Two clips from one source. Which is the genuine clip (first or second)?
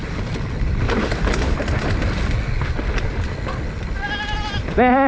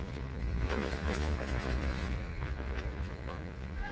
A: first